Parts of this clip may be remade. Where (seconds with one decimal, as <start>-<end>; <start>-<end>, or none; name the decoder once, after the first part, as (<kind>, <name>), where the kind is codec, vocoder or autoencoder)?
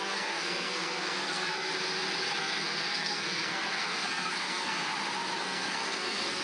0.0-1.7 (codec, SNAC); 2.4-4.9; 5.4-6.4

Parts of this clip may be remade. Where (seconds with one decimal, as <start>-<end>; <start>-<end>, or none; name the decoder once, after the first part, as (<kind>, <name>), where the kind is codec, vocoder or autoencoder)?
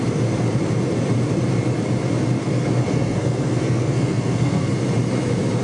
2.4-4.7 (codec, SNAC)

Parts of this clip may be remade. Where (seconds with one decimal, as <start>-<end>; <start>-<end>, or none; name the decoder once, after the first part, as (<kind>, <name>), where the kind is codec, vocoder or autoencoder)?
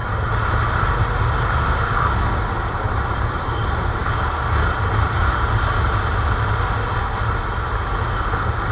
none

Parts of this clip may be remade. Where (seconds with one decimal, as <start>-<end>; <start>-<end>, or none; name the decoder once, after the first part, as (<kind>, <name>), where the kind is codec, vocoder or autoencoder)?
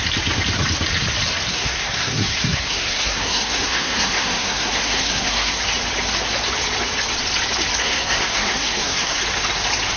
1.5-5.6 (codec, SNAC); 7.8-9.2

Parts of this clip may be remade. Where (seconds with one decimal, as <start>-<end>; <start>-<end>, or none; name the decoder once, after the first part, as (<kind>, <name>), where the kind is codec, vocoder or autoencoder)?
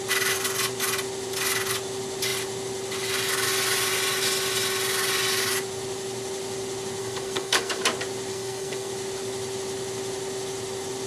7.0-7.8 (codec, SNAC); 8.3-8.9